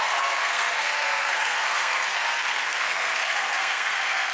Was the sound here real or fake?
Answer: fake